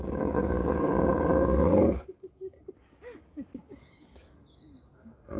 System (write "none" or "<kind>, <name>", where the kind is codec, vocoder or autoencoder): codec, DAC